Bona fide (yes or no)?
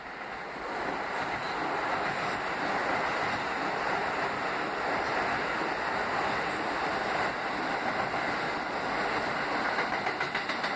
yes